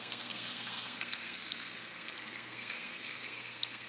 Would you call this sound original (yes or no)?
no